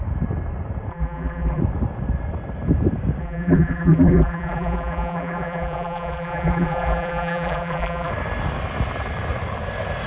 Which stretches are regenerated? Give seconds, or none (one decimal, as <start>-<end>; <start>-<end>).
0.9-1.6; 3.2-8.1